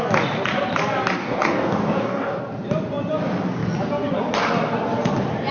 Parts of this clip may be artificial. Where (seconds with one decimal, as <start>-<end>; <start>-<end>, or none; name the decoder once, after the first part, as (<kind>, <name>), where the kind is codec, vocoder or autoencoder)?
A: 1.2-2.4 (codec, DAC)